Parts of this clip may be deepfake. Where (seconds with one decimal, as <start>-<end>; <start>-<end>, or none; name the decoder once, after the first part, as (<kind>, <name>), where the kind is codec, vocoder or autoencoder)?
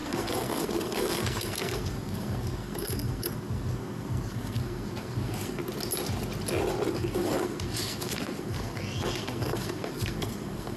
0.0-5.6 (codec, SNAC); 6.9-10.8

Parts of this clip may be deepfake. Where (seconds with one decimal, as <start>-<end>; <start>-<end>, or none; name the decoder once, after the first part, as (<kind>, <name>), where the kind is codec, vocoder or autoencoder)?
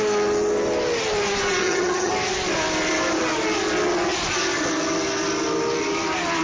1.6-2.1 (vocoder, HiFi-GAN)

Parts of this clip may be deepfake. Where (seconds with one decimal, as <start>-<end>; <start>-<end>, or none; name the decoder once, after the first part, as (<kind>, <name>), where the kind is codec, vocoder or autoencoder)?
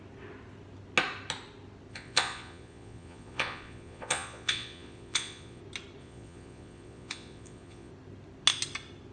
1.9-5.6 (vocoder, Vocos); 6.0-7.9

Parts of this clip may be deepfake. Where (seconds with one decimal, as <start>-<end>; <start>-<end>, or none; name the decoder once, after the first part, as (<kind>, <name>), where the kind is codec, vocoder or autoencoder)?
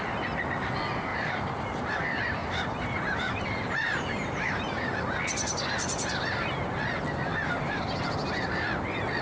1.1-1.8 (vocoder, BigVGAN v2); 2.4-5.0; 7.3-7.8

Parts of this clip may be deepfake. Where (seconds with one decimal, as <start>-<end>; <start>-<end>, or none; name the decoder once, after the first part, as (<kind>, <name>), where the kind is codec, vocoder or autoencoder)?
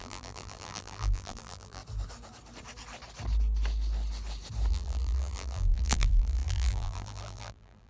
0.0-1.8 (vocoder, BigVGAN v2); 4.7-7.9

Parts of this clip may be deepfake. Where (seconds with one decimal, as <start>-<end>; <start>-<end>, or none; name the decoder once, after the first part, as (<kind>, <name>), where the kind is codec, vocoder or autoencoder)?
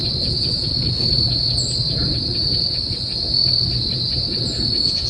none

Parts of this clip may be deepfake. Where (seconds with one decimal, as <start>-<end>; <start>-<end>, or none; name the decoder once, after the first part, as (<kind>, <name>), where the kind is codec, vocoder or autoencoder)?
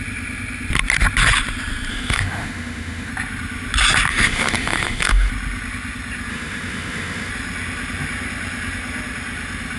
1.9-3.1 (autoencoder, DAC-VAE); 4.1-5.3; 6.3-7.3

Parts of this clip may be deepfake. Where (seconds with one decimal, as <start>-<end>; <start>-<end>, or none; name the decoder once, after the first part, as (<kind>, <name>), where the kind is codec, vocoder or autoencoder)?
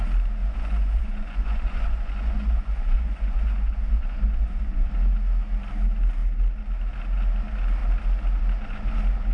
0.4-4.9 (vocoder, Vocos)